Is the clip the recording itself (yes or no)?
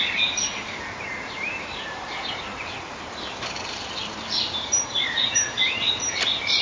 no